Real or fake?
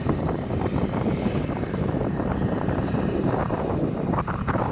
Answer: fake